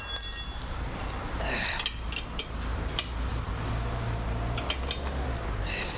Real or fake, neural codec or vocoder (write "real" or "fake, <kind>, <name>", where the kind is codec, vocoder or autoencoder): real